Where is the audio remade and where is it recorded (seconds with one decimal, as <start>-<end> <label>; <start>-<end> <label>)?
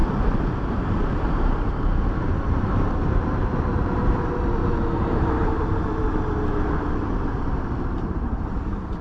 0.0-9.0 remade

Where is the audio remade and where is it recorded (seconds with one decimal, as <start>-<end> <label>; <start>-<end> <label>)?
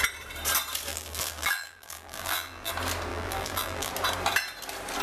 0.0-0.9 recorded; 0.9-2.7 remade; 2.7-3.1 recorded; 3.1-3.9 remade; 3.9-5.0 recorded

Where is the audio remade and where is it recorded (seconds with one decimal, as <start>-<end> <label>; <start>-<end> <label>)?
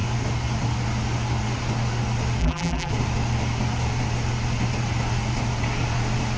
0.0-2.4 recorded; 2.4-2.9 remade; 2.9-6.4 recorded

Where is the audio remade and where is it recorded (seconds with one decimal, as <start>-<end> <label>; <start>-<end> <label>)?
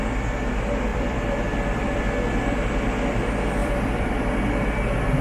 0.0-0.9 recorded; 0.9-2.0 remade; 2.0-3.6 recorded; 3.6-4.1 remade; 4.1-5.2 recorded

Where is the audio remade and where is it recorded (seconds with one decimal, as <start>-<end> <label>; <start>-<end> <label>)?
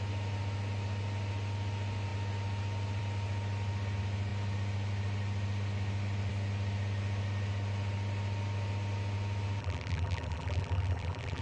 0.0-9.6 recorded; 9.6-11.4 remade